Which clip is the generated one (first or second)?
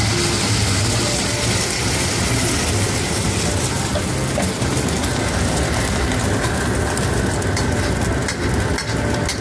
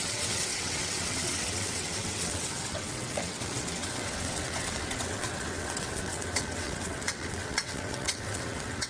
second